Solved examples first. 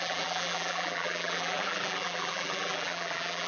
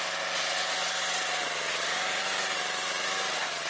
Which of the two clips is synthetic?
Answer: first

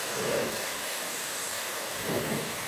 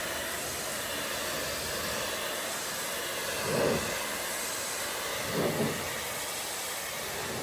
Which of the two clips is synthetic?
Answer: first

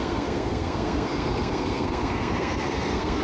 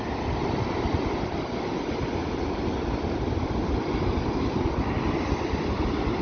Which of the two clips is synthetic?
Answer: first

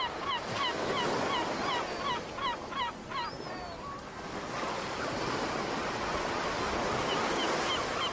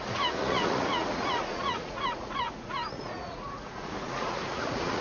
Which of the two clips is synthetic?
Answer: second